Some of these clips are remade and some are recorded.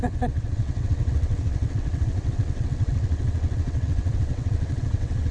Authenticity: remade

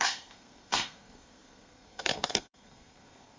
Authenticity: remade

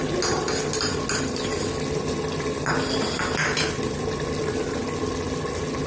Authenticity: recorded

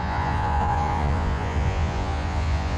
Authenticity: remade